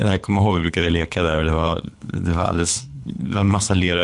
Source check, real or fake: fake